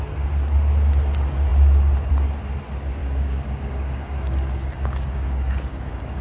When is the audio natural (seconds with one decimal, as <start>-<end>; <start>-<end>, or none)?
0.0-3.0